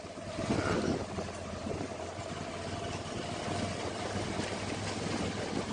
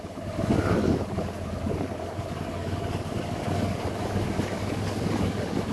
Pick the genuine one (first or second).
first